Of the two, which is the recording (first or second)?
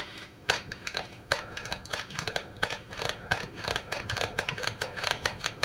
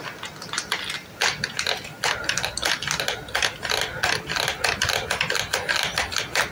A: second